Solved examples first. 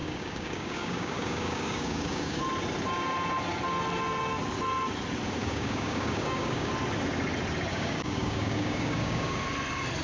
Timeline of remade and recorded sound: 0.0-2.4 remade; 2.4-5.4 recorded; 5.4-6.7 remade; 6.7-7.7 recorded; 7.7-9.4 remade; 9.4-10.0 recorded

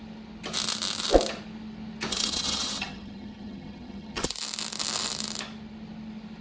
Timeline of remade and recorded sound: 0.0-2.1 recorded; 2.1-4.3 remade; 4.3-6.4 recorded

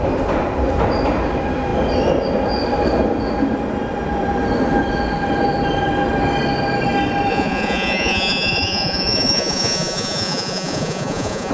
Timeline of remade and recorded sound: 0.0-7.3 recorded; 7.3-11.5 remade

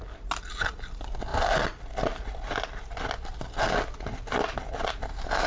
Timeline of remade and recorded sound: 0.0-5.5 recorded

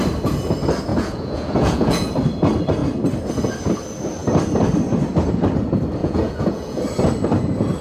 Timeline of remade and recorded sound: 0.0-0.9 recorded; 0.9-2.1 remade; 2.1-6.0 recorded; 6.0-6.8 remade; 6.8-7.8 recorded